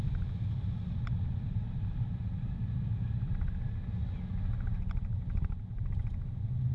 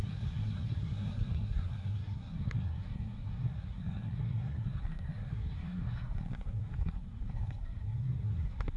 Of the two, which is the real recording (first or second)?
first